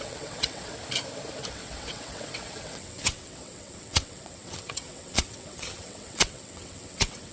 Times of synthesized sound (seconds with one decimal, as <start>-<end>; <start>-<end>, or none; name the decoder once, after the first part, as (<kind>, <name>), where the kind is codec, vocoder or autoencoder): 0.0-0.7 (vocoder, WaveNeXt); 1.5-7.3

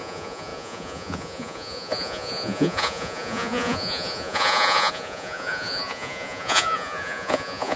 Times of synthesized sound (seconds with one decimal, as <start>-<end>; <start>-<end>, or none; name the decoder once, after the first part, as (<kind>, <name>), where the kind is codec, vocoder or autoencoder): 0.0-7.8 (vocoder, Vocos)